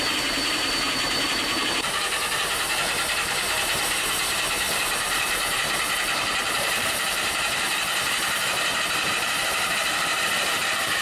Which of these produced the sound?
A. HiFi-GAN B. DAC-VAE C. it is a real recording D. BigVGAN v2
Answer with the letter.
D